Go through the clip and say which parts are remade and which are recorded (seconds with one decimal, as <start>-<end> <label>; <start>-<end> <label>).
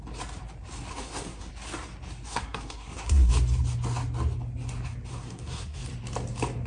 0.0-0.9 recorded; 0.9-1.5 remade; 1.5-2.3 recorded; 2.3-3.3 remade; 3.3-5.1 recorded; 5.1-5.8 remade; 5.8-6.7 recorded